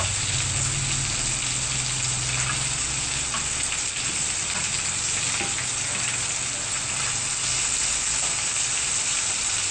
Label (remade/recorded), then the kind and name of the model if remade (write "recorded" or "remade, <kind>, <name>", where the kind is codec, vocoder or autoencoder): recorded